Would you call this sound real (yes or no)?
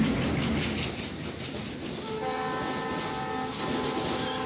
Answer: yes